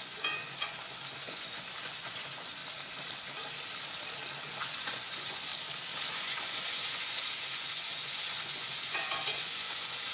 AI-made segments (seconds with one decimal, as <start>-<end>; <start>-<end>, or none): 0.0-2.6; 4.6-5.5; 6.1-10.1